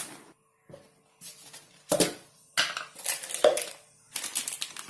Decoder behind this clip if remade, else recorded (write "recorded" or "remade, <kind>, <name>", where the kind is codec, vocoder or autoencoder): recorded